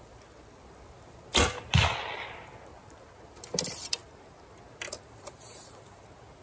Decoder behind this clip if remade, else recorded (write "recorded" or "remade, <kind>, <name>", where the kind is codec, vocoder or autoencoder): recorded